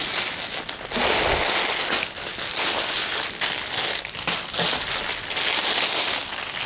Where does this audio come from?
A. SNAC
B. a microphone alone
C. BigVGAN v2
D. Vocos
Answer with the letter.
B